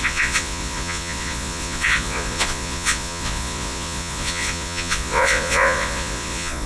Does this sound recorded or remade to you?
remade